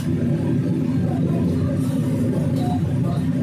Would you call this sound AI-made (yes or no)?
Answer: no